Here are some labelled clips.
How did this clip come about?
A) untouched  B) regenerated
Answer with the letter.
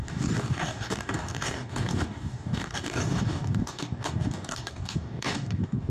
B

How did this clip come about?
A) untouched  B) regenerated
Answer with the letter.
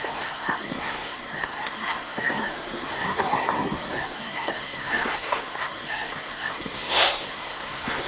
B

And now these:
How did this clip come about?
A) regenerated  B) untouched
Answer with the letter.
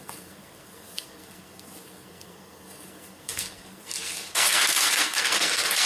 A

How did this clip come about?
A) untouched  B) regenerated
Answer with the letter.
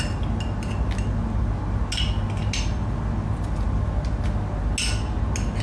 A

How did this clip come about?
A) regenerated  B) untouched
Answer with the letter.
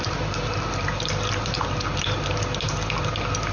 B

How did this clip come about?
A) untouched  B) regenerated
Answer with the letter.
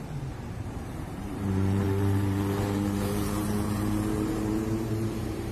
B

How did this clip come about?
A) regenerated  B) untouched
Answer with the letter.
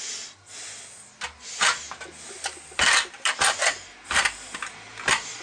B